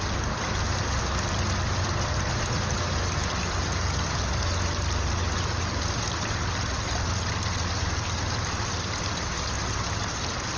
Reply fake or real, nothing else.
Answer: real